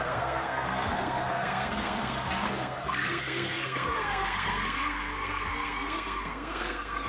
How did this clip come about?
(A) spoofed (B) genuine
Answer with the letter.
A